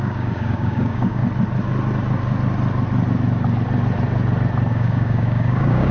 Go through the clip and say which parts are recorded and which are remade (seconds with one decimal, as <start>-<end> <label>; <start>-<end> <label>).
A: 0.0-1.2 remade; 1.2-4.7 recorded; 4.7-5.9 remade